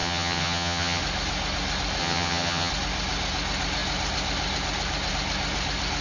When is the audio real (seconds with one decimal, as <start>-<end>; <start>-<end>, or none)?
1.0-2.0; 2.7-6.0